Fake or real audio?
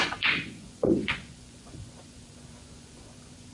fake